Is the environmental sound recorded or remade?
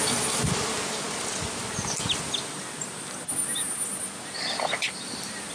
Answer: recorded